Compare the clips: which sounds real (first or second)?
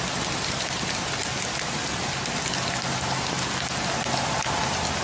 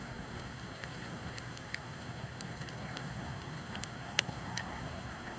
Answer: first